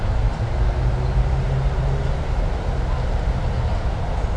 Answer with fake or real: real